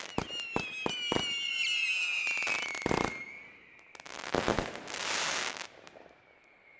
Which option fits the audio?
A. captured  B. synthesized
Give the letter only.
A